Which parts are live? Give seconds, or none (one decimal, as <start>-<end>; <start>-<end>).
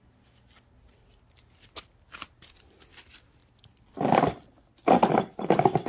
0.0-5.9